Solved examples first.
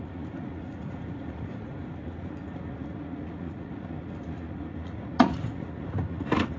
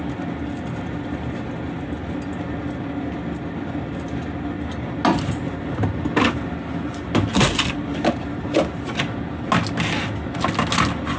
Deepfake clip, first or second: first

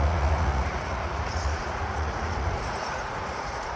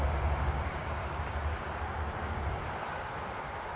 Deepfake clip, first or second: first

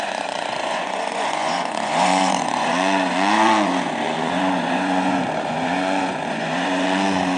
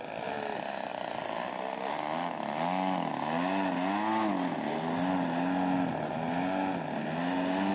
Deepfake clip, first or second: first